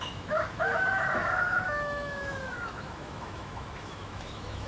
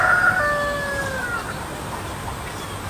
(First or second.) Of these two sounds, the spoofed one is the first